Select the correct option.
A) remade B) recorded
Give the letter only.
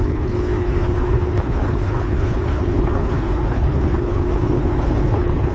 A